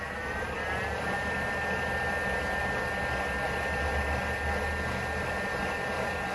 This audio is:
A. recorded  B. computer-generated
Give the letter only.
A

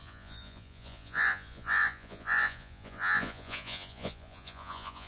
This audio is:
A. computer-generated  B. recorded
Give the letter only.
A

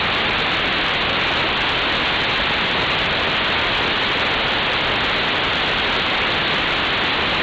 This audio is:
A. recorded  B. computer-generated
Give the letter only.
A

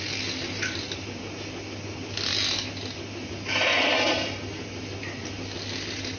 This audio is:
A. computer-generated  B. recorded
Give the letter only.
B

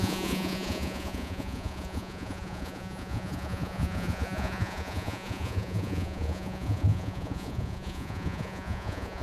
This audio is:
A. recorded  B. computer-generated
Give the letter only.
B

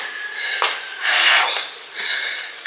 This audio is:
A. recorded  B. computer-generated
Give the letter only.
A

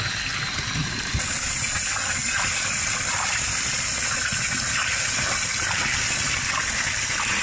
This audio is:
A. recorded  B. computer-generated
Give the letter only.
A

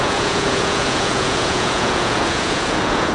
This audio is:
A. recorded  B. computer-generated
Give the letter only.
B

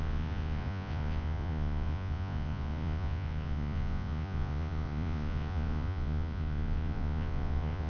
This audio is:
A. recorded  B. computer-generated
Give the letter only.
B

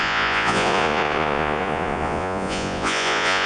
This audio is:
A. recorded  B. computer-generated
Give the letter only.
B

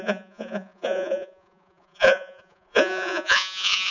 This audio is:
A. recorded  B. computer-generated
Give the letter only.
B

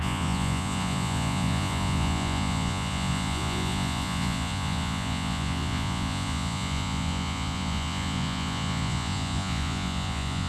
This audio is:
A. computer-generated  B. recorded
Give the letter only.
A